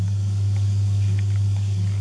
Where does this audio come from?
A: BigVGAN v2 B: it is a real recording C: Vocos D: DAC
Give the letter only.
D